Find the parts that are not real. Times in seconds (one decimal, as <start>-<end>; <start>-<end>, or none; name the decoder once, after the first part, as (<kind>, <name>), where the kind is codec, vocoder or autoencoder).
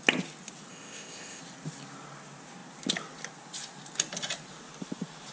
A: 0.7-1.4 (codec, ZipCodec)